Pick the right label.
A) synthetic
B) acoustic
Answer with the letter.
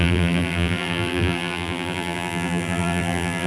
A